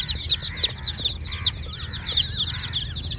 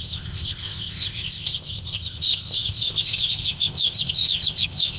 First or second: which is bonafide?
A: first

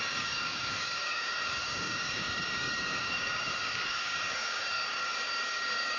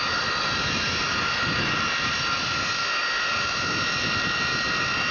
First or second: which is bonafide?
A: second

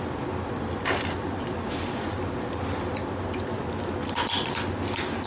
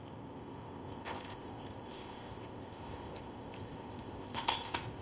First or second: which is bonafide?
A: first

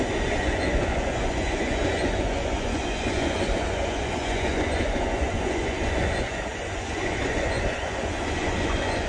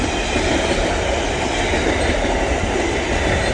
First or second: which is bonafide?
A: second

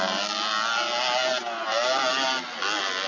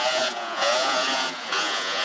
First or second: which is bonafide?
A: first